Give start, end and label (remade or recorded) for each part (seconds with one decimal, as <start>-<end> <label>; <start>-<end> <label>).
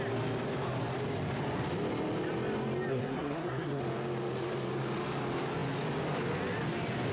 0.0-2.9 recorded; 2.9-3.8 remade; 3.8-7.1 recorded